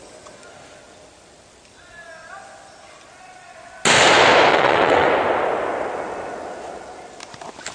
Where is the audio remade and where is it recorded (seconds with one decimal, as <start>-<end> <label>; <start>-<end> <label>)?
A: 0.0-4.5 recorded; 4.5-5.1 remade; 5.1-7.7 recorded